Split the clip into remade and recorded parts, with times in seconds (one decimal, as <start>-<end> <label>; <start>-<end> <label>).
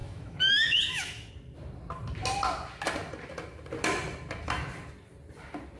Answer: 0.0-1.3 remade; 1.3-5.8 recorded